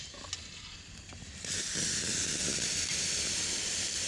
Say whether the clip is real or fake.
real